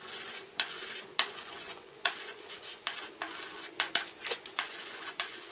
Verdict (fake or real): fake